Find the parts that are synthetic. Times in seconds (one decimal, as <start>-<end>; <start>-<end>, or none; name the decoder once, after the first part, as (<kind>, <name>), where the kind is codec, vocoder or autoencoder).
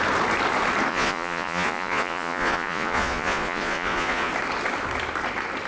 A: 0.9-4.3 (vocoder, Vocos)